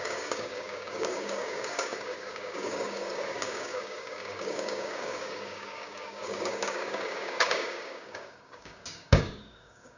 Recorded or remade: remade